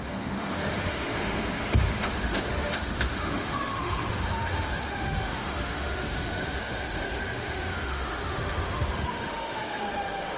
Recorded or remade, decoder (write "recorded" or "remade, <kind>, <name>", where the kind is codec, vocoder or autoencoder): remade, autoencoder, DAC-VAE